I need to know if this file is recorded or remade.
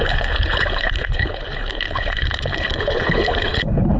remade